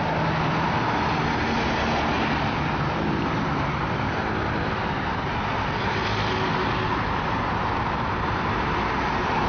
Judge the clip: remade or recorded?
recorded